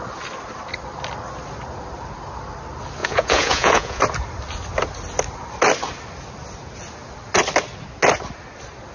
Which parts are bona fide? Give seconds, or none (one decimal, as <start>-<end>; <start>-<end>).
0.0-3.0; 4.0-8.9